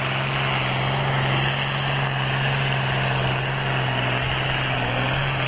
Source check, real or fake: real